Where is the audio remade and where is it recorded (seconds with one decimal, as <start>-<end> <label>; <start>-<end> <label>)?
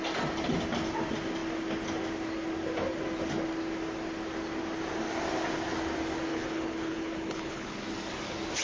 0.0-6.3 recorded; 6.3-7.7 remade; 7.7-8.6 recorded